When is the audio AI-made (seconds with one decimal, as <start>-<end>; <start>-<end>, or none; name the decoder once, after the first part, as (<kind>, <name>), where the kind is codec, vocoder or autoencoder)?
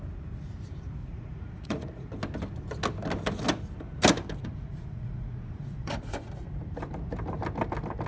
1.0-2.1 (vocoder, Vocos); 4.4-6.3